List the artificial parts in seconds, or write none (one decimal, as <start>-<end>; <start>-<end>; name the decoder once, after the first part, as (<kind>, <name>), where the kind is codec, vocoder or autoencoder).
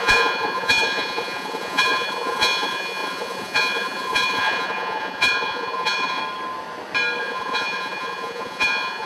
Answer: 0.0-6.2 (vocoder, Vocos); 7.2-9.1